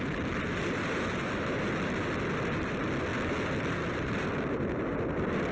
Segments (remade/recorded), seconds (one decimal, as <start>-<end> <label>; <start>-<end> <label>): 0.0-5.5 recorded